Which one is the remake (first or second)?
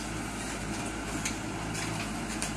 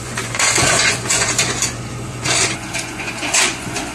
second